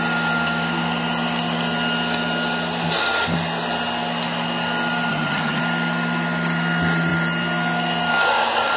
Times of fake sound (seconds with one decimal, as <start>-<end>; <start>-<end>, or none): 5.1-5.6